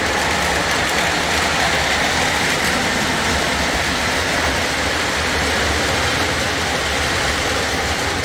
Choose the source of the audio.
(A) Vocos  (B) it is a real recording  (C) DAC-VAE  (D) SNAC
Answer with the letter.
B